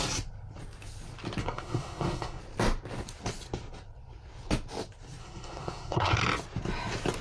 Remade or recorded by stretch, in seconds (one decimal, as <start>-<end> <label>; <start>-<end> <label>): 0.0-1.4 recorded; 1.4-2.4 remade; 2.4-5.2 recorded; 5.2-6.2 remade; 6.2-7.2 recorded